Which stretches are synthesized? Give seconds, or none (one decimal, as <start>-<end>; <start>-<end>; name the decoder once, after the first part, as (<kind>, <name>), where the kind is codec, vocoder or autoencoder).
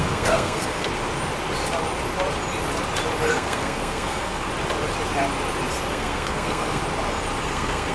0.0-0.9 (codec, SNAC); 3.3-4.5; 5.9-6.8; 7.4-7.9